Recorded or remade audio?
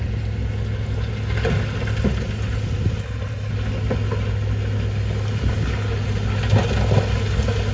recorded